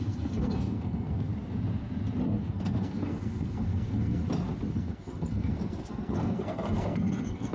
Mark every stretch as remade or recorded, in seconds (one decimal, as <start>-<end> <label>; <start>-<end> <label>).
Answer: 0.0-1.3 remade; 1.3-2.4 recorded; 2.4-4.2 remade; 4.2-4.7 recorded; 4.7-7.5 remade